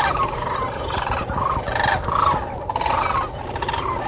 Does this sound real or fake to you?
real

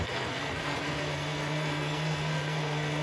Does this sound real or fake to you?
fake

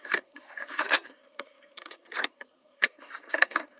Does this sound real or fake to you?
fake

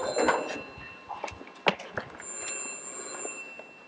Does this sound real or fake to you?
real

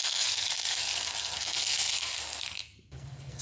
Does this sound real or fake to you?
fake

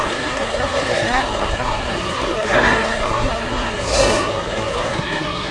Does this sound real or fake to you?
fake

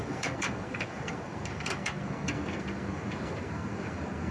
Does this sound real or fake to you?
fake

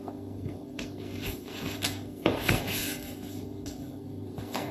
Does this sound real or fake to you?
fake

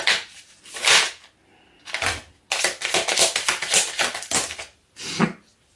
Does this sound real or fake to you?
real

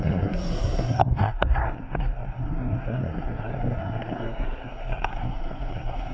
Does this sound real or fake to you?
fake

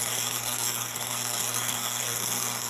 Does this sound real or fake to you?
fake